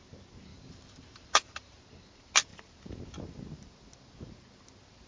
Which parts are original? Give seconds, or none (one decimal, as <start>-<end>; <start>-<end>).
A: 0.0-0.5; 1.8-5.1